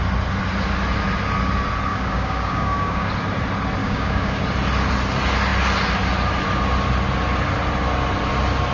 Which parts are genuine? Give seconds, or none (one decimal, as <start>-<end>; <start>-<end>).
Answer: 0.0-1.9; 3.1-3.8; 4.4-8.7

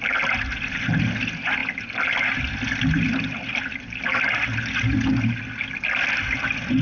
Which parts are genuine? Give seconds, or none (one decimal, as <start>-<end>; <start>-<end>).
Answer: 0.0-6.8

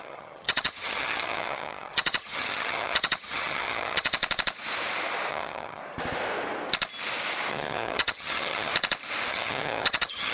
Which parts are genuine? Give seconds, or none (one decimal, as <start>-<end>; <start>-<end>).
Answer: 4.2-5.3; 5.8-7.5; 8.7-9.3

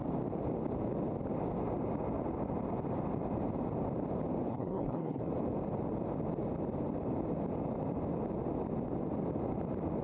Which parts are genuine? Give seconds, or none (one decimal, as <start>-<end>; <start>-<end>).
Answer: 0.0-4.5; 5.2-10.0

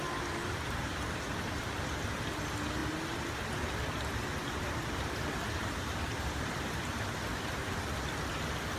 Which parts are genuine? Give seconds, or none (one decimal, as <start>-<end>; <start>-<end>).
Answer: 1.6-4.4; 6.8-8.8

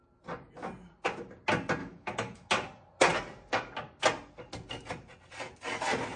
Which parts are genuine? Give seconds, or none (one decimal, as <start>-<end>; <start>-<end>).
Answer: 0.0-1.8; 2.5-6.2

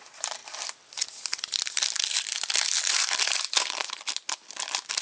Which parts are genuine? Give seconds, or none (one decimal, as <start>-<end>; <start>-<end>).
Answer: 0.0-5.0

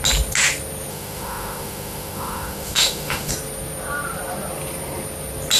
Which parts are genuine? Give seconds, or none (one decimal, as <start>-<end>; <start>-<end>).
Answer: 0.0-0.9; 3.3-5.6